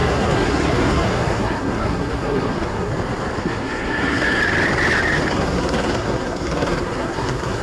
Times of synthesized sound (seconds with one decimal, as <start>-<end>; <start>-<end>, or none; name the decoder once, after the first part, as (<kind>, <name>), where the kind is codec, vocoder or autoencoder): 0.0-2.9 (codec, SNAC); 3.4-4.4; 5.3-7.6

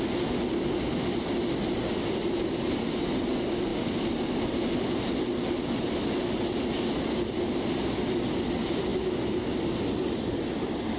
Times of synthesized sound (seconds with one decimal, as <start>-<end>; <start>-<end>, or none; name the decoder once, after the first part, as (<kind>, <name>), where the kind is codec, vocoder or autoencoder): none

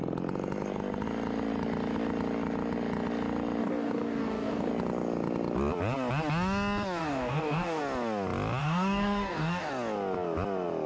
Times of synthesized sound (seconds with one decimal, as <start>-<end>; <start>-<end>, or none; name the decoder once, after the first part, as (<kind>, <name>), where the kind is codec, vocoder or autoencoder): 3.6-4.7 (codec, DAC); 7.0-7.8; 8.6-9.7

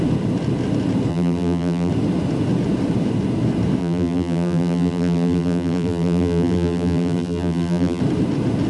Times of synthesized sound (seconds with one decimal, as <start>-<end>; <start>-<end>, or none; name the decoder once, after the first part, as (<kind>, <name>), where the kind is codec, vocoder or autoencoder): 1.1-1.9 (vocoder, BigVGAN v2); 3.8-8.0

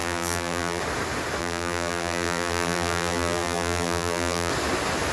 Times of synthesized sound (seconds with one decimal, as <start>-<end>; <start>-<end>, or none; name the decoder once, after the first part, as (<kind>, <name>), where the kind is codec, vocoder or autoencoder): 0.0-0.8 (vocoder, BigVGAN v2); 1.4-4.5

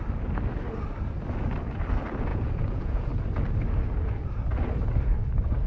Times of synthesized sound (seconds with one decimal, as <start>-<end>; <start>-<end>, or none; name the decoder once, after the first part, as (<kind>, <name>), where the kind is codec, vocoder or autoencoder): 2.3-3.1 (vocoder, Vocos)

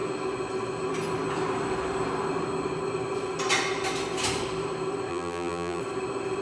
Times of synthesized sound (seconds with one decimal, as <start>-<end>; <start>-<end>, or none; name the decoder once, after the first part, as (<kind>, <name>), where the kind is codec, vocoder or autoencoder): 5.1-5.8 (vocoder, BigVGAN v2)